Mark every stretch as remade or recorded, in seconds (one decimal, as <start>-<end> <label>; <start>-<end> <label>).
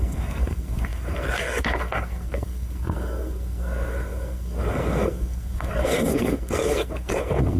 0.0-7.6 remade